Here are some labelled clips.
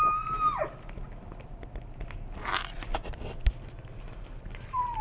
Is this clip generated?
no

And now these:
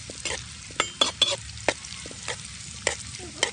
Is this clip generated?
no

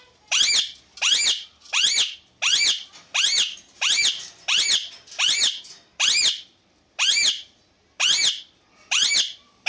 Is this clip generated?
no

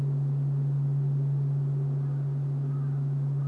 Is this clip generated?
no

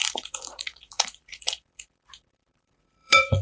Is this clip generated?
yes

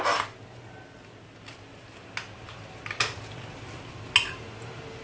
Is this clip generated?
no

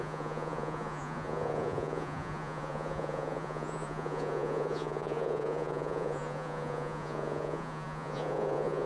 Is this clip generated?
yes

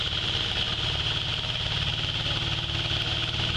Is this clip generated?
no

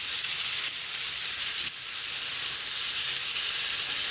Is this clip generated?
no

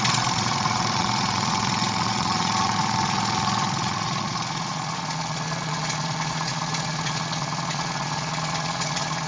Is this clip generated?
yes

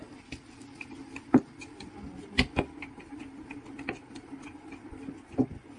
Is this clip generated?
no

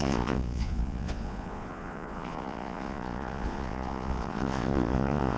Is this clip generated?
yes